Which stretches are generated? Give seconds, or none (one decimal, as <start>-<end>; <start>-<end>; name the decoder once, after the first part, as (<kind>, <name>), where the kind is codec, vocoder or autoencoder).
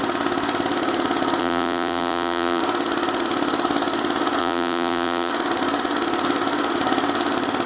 1.4-2.6 (vocoder, BigVGAN v2); 4.4-5.3